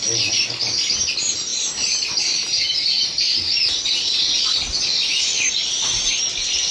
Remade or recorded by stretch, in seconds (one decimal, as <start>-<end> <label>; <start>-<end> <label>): 0.0-6.7 recorded